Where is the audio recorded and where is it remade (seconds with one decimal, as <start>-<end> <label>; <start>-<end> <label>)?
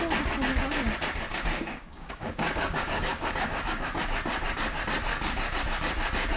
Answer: 0.0-1.3 recorded; 1.3-4.0 remade; 4.0-5.1 recorded; 5.1-5.6 remade; 5.6-6.4 recorded